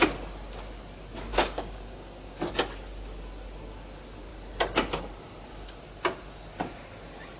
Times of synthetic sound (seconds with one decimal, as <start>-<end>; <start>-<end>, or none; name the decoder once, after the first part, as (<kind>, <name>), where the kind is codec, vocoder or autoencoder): 1.3-2.4 (codec, DAC)